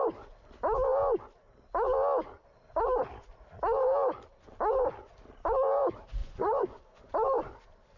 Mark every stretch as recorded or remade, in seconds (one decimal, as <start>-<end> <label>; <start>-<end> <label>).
0.0-6.2 recorded; 6.2-7.0 remade; 7.0-8.0 recorded